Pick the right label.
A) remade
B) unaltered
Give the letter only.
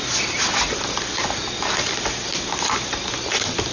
B